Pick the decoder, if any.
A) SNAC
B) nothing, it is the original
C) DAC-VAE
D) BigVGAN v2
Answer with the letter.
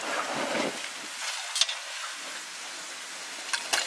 B